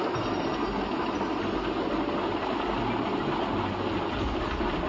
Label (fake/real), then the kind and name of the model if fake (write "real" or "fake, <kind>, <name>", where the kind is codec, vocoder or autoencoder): real